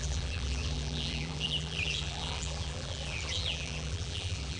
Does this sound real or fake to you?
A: fake